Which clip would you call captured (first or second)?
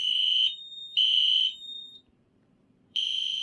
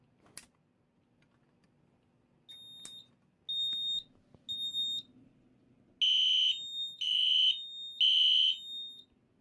second